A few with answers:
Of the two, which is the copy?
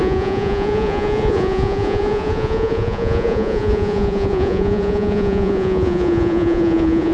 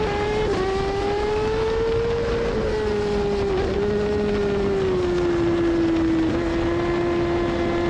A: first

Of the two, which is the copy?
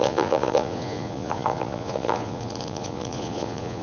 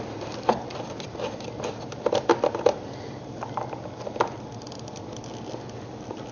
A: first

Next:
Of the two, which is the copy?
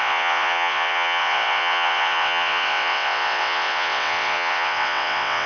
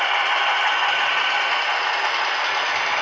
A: first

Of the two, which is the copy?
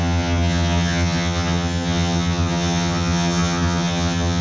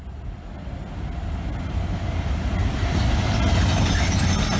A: first